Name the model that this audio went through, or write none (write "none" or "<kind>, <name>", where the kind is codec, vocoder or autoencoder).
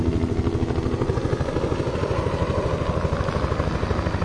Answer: none